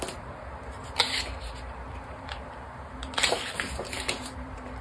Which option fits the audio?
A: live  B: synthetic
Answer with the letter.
B